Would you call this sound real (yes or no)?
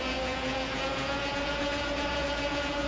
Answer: no